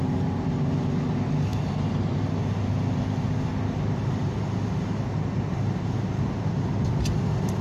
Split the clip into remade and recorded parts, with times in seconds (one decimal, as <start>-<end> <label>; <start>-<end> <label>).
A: 0.0-7.6 recorded